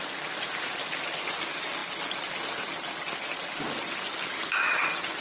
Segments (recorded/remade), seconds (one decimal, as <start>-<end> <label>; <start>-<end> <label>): 0.0-1.8 remade; 1.8-5.2 recorded